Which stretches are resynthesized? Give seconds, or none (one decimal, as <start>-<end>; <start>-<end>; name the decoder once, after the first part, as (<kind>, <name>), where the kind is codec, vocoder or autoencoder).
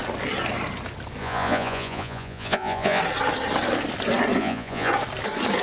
1.2-3.0 (vocoder, Vocos); 4.4-4.9